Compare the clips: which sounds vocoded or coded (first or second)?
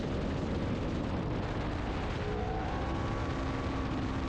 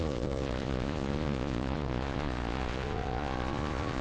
second